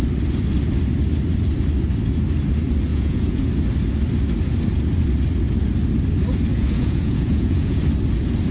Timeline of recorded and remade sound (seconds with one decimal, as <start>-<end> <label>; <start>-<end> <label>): 0.0-2.9 recorded; 2.9-3.5 remade; 3.5-6.5 recorded; 6.5-7.8 remade; 7.8-8.5 recorded